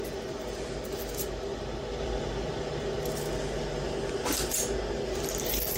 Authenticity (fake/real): real